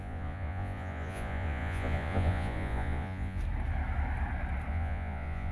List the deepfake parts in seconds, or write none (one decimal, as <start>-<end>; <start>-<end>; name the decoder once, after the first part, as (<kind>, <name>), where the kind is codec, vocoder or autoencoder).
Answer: 0.0-3.4 (vocoder, Vocos); 4.7-5.5